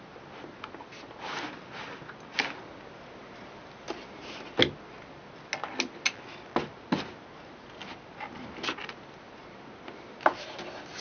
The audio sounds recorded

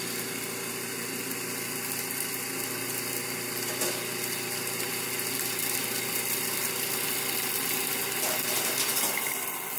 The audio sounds recorded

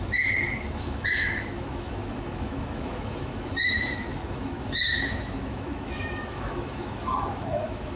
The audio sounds remade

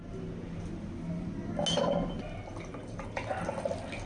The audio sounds recorded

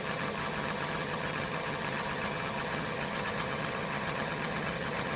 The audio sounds remade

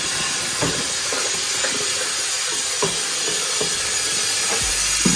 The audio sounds recorded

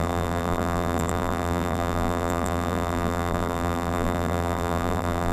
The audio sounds remade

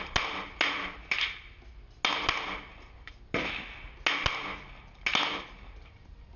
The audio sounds recorded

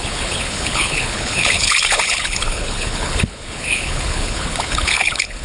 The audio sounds remade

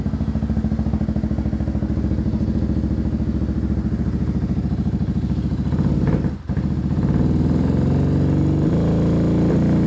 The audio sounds recorded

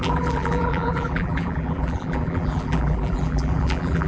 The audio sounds remade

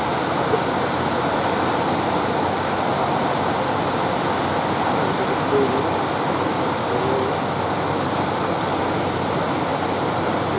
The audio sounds recorded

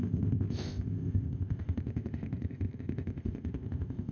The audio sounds remade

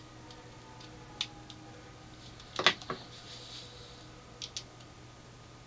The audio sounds recorded